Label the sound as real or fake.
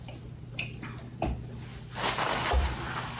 real